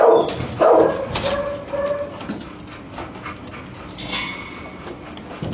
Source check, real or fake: real